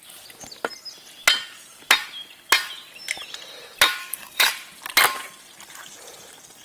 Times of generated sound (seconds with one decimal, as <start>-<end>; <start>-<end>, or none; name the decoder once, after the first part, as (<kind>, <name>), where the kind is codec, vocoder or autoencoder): 4.0-4.5 (codec, DAC)